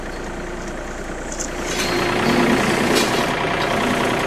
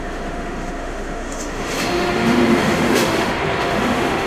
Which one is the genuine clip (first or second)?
first